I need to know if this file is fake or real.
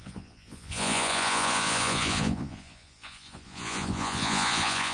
fake